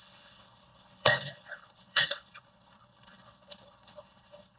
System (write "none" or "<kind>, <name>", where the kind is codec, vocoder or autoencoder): codec, HILCodec